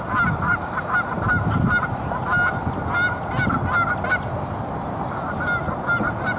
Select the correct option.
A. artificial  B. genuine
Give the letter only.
B